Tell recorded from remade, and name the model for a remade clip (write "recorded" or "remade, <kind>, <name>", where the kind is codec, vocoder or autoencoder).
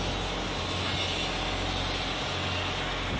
recorded